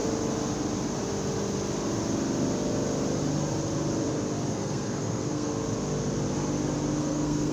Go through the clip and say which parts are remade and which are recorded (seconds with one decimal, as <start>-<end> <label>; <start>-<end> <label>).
0.0-4.5 recorded; 4.5-5.5 remade; 5.5-7.0 recorded; 7.0-7.5 remade